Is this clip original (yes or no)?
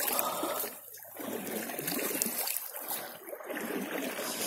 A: no